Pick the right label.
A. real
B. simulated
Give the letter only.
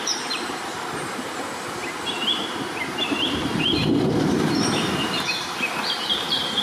B